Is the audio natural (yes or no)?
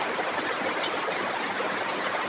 yes